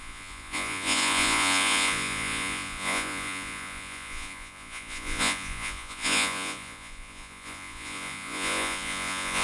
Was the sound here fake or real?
fake